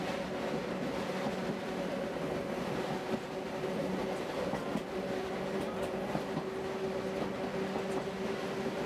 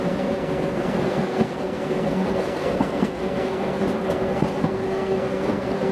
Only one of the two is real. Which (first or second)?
first